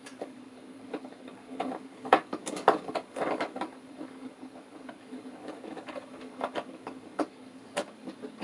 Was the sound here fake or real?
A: fake